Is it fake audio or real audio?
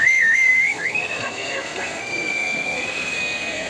fake